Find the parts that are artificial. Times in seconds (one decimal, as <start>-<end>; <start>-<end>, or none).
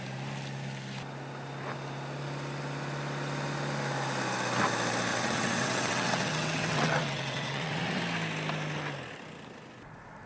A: 5.1-8.0